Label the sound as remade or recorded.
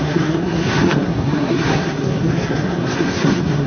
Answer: remade